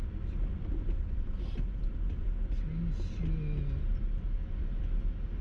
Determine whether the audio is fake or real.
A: real